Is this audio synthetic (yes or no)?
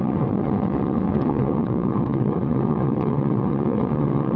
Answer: yes